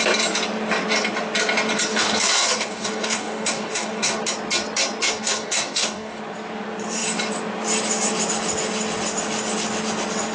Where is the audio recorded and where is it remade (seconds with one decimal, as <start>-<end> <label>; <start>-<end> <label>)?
0.0-1.9 recorded; 1.9-4.2 remade; 4.2-5.0 recorded; 5.0-6.2 remade; 6.2-10.3 recorded